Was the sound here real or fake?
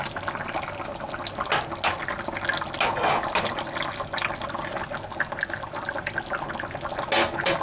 real